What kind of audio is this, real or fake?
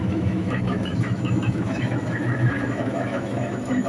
fake